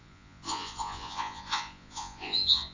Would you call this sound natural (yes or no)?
no